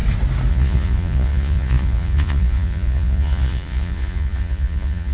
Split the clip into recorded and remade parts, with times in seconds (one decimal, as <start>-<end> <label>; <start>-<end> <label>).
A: 0.0-0.5 recorded; 0.5-5.1 remade